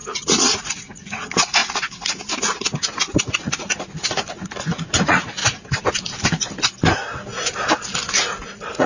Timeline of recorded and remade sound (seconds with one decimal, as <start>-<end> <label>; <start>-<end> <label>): 0.0-1.6 remade; 1.6-3.3 recorded; 3.3-4.0 remade; 4.0-5.0 recorded; 5.0-5.4 remade; 5.4-8.5 recorded; 8.5-8.9 remade